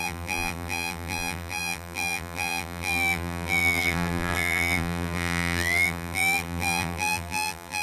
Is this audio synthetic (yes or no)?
yes